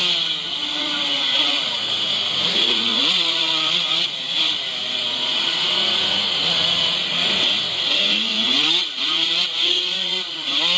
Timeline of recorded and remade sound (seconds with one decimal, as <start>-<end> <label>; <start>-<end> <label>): 0.0-0.6 recorded; 0.6-4.4 remade; 4.4-4.9 recorded; 4.9-10.8 remade